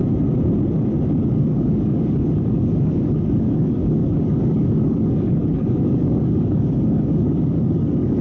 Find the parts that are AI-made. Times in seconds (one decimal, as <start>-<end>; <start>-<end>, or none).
1.3-8.2